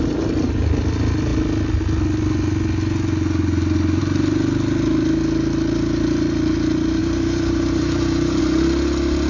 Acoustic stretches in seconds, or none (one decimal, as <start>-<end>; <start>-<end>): 0.0-7.0; 8.4-9.3